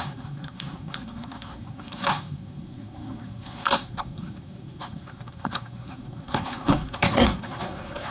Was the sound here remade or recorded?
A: remade